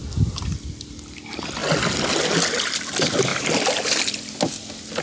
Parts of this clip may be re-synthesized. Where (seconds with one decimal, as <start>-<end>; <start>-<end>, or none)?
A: 0.0-1.2; 3.3-3.9

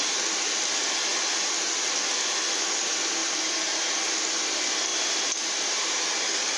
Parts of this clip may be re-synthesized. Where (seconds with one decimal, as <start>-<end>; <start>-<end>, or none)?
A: 3.2-3.9; 4.9-6.0